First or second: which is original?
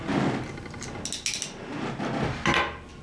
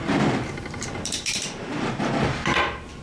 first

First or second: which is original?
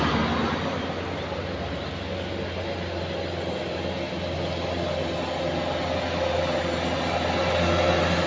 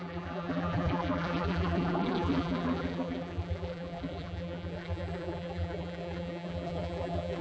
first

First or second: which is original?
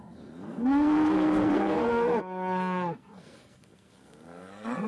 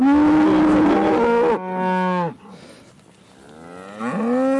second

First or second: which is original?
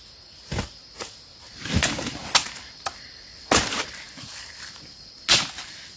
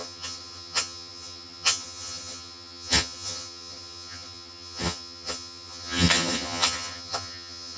first